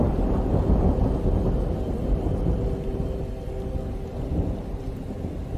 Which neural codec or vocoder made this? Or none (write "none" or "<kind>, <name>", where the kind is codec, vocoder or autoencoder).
none